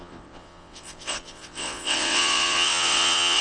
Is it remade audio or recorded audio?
remade